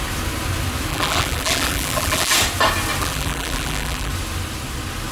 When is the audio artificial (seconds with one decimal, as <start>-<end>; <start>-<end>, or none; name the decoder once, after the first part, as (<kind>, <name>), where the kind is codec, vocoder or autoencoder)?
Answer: 0.9-2.3 (vocoder, BigVGAN v2); 3.0-4.1